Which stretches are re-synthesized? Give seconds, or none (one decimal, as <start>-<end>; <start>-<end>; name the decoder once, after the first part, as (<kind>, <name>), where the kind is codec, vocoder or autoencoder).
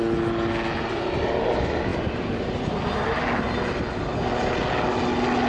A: none